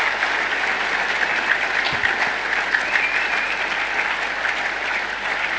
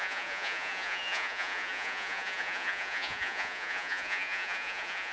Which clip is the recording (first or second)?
first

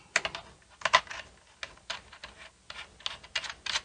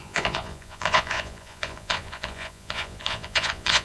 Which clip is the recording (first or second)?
first